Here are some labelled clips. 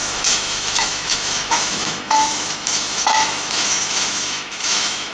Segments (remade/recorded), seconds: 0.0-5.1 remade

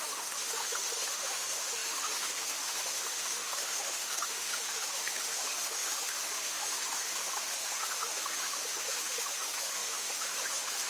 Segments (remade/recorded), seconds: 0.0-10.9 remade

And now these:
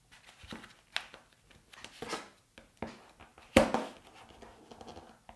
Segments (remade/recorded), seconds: 0.0-5.4 recorded

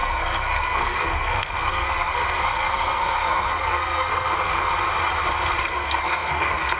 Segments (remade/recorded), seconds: 0.0-4.7 remade; 4.7-5.6 recorded; 5.6-6.8 remade